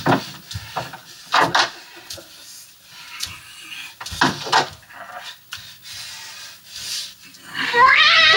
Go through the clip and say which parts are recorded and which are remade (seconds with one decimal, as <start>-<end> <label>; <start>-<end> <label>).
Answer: 0.0-7.5 recorded; 7.5-8.0 remade; 8.0-8.4 recorded